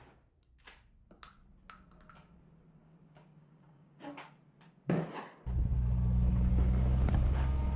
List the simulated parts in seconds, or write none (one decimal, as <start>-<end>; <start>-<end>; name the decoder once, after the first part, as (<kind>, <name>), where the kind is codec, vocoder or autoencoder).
2.8-4.3 (codec, DAC)